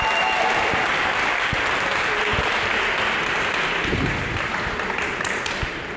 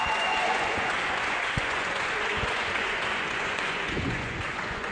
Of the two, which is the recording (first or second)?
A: first